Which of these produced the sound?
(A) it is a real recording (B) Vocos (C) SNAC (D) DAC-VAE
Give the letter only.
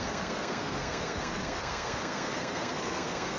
C